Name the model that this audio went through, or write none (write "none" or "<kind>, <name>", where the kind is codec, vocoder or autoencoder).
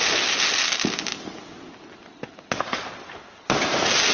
none